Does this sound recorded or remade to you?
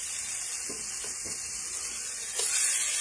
recorded